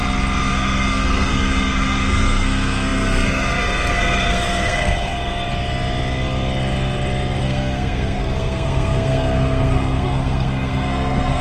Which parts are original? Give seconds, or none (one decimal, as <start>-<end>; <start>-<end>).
0.0-0.5; 5.3-7.4